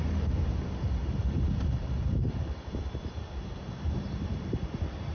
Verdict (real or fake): fake